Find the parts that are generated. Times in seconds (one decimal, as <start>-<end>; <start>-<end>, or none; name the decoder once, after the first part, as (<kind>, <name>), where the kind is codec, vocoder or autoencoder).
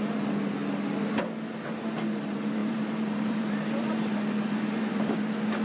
2.6-5.6 (vocoder, BigVGAN v2)